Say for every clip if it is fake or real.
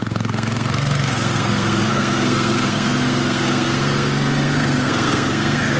fake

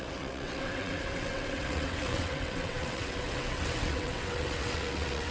fake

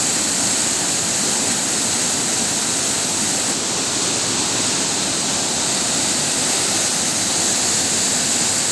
real